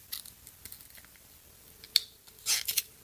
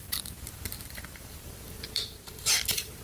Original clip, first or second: first